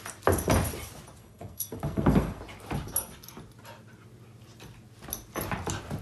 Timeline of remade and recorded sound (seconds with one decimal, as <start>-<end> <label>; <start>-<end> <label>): 0.0-1.2 recorded; 1.2-2.4 remade; 2.4-6.0 recorded